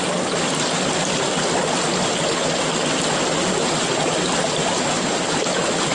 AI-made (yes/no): no